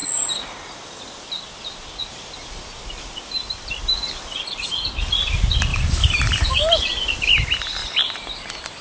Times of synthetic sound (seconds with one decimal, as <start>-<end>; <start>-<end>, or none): 5.7-6.6; 7.8-8.8

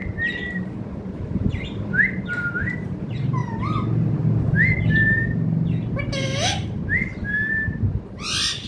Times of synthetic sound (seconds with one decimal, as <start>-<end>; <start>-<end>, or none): 3.0-3.4

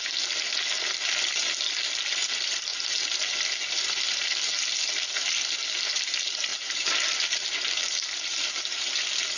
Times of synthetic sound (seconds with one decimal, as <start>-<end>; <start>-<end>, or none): 2.7-4.2; 6.5-9.0